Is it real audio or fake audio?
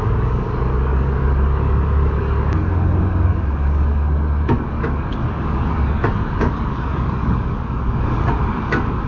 fake